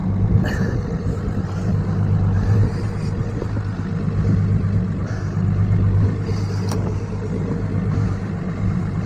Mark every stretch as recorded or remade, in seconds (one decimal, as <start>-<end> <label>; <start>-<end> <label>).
0.0-9.1 recorded